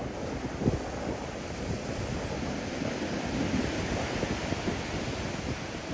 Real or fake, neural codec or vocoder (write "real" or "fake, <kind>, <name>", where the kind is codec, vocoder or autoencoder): real